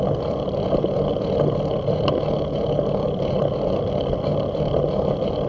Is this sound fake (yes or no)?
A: no